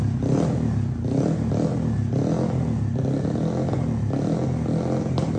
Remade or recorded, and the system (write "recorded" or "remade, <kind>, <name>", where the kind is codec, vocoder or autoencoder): recorded